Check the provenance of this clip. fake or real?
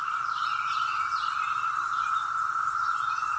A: real